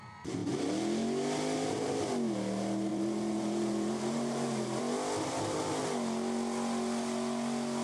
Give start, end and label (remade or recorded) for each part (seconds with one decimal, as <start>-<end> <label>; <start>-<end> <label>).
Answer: 0.0-2.9 recorded; 2.9-4.8 remade; 4.8-7.8 recorded